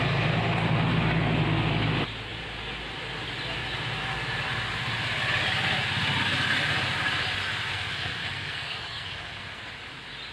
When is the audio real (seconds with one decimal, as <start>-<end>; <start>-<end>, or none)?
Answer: 0.0-7.7; 9.7-10.3